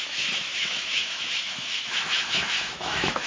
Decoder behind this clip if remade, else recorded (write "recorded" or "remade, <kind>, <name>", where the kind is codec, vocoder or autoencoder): remade, autoencoder, DAC-VAE